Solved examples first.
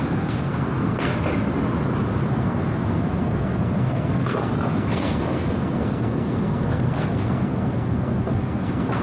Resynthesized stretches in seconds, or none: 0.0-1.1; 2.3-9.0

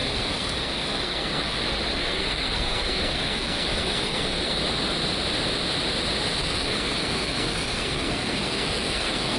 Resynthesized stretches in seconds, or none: 0.0-1.6; 2.0-4.6; 6.4-9.4

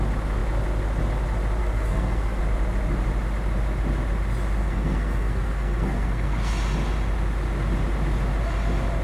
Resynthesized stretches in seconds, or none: 1.6-2.4; 4.6-6.5

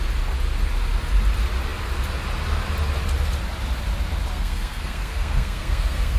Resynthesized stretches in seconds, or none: 4.3-6.2

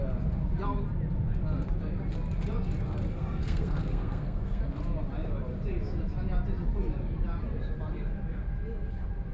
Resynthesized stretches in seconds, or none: 3.1-4.6